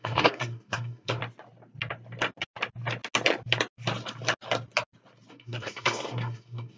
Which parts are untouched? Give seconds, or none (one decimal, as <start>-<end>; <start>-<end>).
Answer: 1.2-5.3